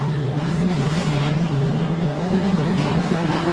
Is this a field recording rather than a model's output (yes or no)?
no